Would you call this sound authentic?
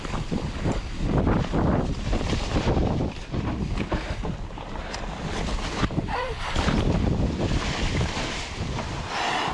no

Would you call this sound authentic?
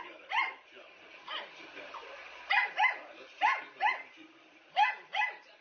no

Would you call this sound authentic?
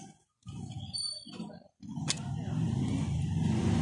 yes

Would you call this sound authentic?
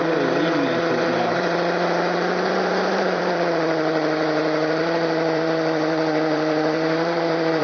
no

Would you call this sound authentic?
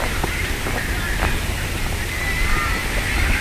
yes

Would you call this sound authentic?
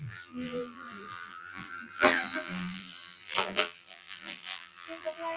no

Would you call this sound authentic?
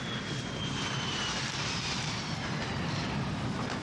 yes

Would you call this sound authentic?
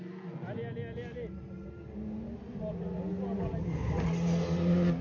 yes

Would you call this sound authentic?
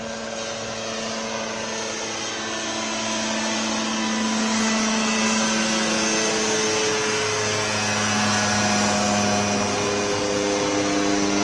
yes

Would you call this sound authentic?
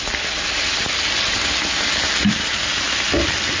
yes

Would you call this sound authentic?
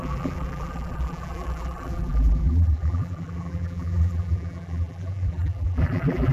no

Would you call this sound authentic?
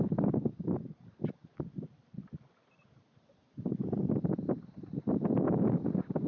no